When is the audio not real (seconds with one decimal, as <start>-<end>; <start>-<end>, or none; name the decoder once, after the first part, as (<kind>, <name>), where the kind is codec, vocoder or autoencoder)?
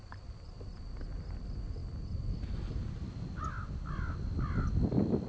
none